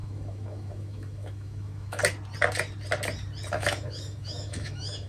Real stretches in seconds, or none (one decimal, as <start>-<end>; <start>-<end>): 2.0-3.5